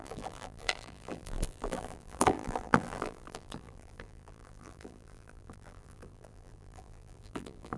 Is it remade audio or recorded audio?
remade